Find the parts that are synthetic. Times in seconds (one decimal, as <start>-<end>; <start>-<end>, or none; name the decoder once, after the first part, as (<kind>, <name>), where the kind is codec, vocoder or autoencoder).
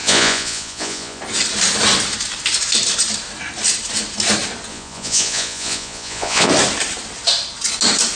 0.0-1.2 (vocoder, Vocos); 4.7-6.5